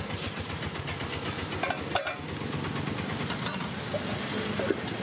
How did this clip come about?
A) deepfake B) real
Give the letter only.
B